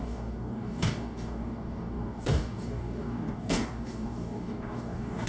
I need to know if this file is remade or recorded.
remade